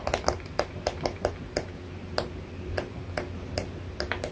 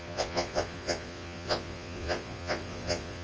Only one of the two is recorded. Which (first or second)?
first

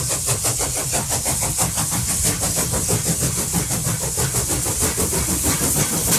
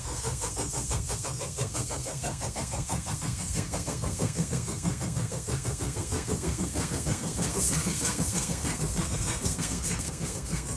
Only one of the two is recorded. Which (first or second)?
first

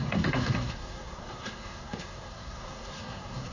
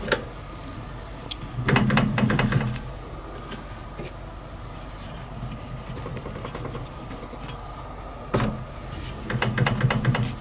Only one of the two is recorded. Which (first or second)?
second